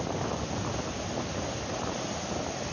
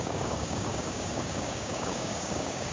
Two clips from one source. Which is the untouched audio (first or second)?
first